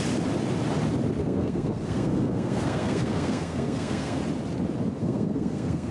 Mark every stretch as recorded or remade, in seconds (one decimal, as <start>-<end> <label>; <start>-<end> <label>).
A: 0.0-1.2 recorded; 1.2-4.2 remade; 4.2-5.0 recorded; 5.0-5.9 remade